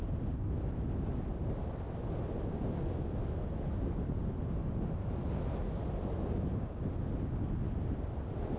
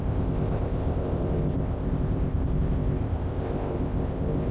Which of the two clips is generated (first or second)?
second